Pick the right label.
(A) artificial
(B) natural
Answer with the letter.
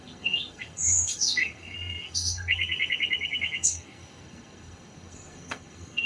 A